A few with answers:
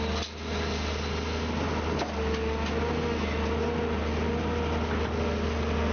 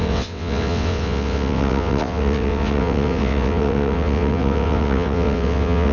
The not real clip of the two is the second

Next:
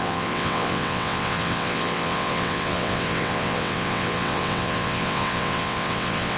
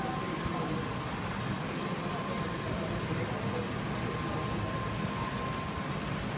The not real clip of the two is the first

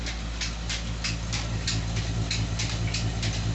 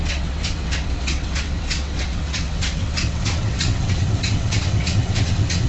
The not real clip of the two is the second